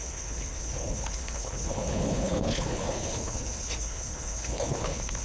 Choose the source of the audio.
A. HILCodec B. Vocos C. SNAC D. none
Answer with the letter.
A